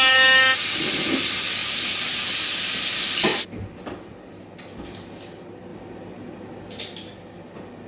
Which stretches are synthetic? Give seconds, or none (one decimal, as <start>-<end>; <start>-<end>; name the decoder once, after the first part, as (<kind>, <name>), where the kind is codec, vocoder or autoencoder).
none